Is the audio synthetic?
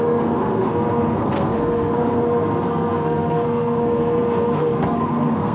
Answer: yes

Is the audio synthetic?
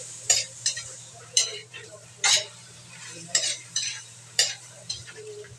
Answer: yes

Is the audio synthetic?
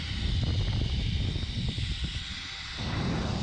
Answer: no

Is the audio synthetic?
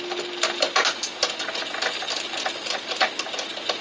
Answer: no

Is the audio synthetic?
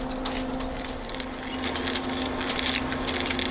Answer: no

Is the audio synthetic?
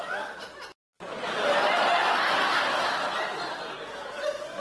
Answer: no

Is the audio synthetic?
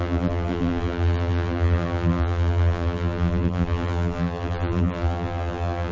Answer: yes